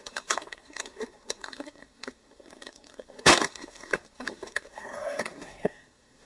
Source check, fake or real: fake